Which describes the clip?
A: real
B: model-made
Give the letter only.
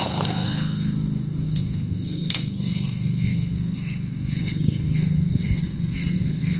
B